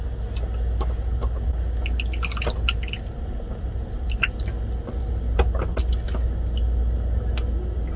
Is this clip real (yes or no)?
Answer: yes